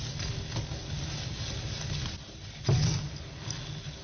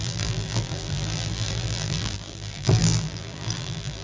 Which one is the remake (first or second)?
second